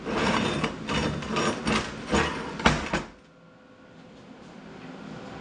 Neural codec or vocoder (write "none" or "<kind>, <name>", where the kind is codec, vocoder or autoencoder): none